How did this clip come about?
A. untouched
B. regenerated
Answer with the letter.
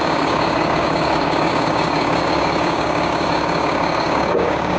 B